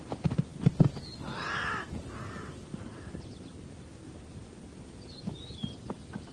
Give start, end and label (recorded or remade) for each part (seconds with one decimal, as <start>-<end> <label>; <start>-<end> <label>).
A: 0.0-6.3 recorded